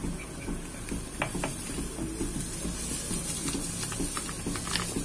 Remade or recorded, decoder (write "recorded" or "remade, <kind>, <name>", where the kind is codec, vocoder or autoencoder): recorded